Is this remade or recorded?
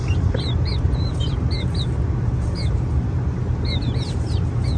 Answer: remade